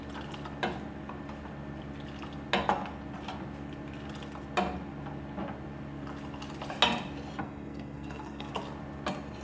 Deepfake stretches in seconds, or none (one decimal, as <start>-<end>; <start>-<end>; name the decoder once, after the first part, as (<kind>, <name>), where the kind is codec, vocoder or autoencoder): 7.4-8.5 (codec, SNAC)